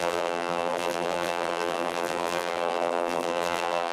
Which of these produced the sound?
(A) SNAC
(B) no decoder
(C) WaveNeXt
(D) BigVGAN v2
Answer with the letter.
D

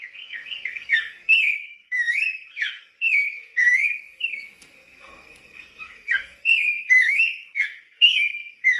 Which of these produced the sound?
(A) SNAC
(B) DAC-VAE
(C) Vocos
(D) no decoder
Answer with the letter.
A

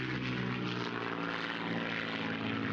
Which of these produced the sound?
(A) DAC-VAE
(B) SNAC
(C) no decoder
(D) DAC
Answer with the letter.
C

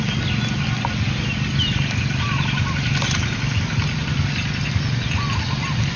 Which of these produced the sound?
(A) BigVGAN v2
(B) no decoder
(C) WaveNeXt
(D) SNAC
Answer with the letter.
B